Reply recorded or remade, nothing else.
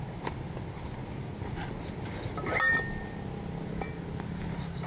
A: recorded